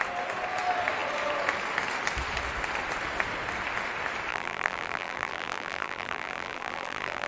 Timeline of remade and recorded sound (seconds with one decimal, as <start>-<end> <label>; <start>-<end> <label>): 0.0-4.3 recorded; 4.3-7.3 remade